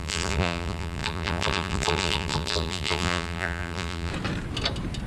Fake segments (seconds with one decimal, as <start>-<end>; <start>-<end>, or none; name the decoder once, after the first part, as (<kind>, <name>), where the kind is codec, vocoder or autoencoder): 0.0-4.1 (vocoder, BigVGAN v2)

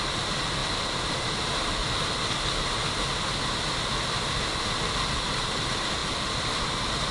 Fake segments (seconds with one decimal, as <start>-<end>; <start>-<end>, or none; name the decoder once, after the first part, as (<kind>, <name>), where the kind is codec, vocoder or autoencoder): 0.0-1.8 (vocoder, BigVGAN v2); 4.9-6.0

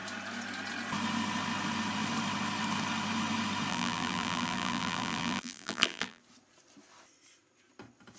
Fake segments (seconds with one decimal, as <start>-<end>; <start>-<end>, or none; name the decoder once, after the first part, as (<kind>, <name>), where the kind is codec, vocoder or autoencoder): 3.7-6.2 (vocoder, BigVGAN v2)

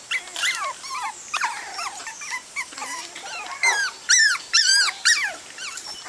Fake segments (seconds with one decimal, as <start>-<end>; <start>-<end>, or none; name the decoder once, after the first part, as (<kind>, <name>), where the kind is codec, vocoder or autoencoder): 2.0-3.1 (vocoder, BigVGAN v2); 4.2-6.1

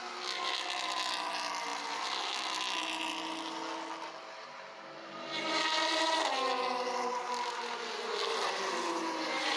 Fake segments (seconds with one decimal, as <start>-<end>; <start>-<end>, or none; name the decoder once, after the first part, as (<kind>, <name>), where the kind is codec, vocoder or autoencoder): none

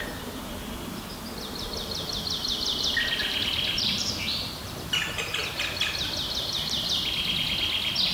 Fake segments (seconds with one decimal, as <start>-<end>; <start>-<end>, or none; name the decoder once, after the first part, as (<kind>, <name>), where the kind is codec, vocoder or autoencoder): 3.2-4.3 (vocoder, BigVGAN v2)

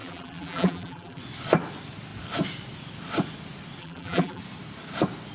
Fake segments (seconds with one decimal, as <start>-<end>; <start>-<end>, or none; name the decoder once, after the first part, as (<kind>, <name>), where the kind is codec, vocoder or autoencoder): 0.0-1.2 (vocoder, BigVGAN v2); 3.8-4.4

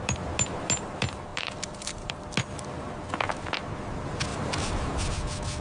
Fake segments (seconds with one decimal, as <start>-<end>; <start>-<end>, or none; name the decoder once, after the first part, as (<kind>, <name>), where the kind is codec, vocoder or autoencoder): 1.3-2.1 (vocoder, BigVGAN v2); 4.3-5.1